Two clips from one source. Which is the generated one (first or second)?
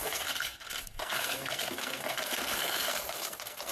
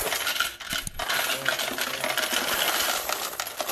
first